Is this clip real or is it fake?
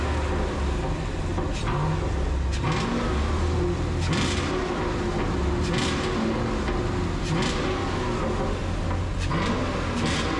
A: real